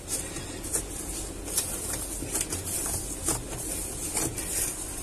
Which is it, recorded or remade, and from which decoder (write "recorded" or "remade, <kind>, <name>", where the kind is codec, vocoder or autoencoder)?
recorded